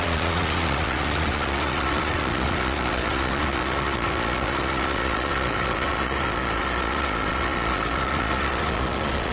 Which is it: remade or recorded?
remade